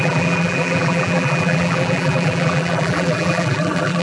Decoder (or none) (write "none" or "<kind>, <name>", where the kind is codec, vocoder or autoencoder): vocoder, BigVGAN v2